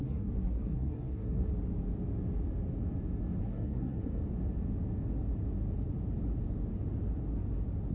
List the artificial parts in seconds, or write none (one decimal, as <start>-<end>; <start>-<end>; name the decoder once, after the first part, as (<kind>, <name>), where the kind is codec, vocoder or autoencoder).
0.0-1.5 (codec, SNAC); 3.4-4.2

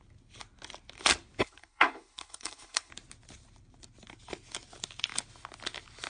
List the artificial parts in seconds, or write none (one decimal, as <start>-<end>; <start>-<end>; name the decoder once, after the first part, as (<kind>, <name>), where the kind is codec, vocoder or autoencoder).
1.4-2.9 (codec, HILCodec)

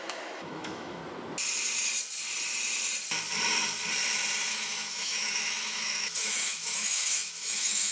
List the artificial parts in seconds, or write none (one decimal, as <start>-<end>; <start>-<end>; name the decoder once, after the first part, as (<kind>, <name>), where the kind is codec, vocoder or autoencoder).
0.0-1.0 (autoencoder, DAC-VAE); 4.5-7.9

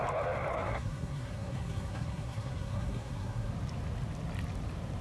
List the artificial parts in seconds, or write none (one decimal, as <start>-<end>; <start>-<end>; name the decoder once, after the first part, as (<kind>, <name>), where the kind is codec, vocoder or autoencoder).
0.5-3.5 (codec, SNAC)

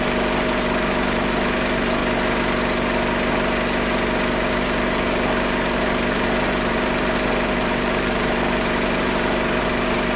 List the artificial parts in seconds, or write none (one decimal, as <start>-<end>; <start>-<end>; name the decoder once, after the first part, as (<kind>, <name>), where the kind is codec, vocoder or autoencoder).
0.0-2.0 (vocoder, BigVGAN v2); 4.4-10.2

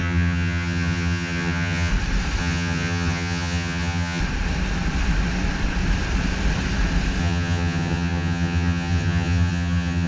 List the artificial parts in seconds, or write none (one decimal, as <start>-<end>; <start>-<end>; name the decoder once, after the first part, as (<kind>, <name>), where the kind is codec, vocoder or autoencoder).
0.0-1.9 (vocoder, HiFi-GAN); 2.4-4.2; 7.2-10.1

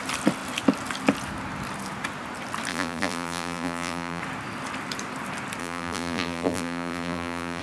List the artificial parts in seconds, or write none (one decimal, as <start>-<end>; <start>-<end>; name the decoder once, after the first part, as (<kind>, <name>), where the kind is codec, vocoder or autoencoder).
2.7-4.2 (vocoder, BigVGAN v2); 5.6-7.6

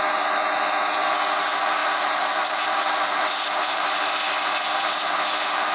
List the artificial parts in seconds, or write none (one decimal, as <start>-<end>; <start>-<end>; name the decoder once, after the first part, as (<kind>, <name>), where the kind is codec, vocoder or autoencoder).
1.8-4.1 (vocoder, BigVGAN v2)